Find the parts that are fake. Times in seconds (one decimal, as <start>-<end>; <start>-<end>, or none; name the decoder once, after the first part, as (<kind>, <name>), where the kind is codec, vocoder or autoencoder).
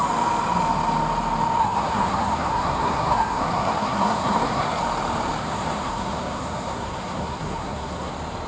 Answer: 1.6-4.8 (codec, SNAC); 5.4-8.1